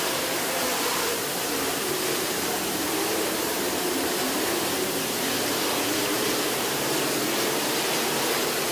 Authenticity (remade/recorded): remade